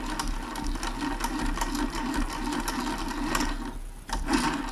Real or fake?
real